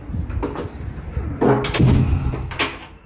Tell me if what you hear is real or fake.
real